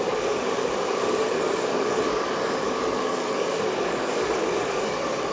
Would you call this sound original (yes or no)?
no